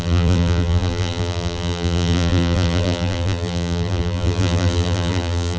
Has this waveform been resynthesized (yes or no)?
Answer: yes